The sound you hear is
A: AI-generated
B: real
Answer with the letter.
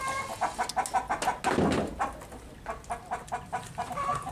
B